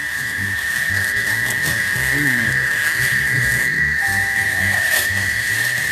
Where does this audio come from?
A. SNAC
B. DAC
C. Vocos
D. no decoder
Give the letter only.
A